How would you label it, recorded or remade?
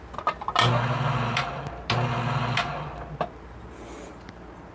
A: recorded